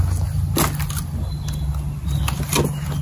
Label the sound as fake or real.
real